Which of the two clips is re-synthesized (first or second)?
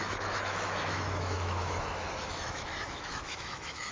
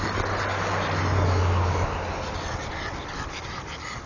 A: first